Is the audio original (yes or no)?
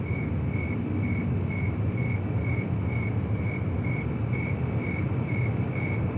yes